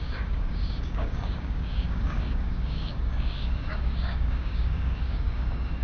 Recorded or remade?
remade